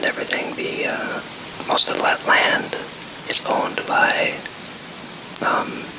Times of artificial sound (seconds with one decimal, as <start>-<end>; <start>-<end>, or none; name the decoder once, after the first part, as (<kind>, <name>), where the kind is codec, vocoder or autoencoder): none